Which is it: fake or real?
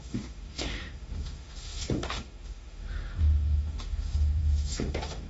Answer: fake